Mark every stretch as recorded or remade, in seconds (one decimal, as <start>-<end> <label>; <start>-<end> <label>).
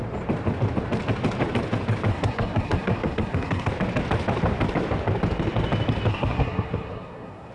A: 0.0-2.1 recorded; 2.1-3.7 remade; 3.7-6.1 recorded; 6.1-7.5 remade